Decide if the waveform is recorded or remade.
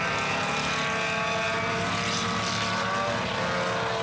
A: recorded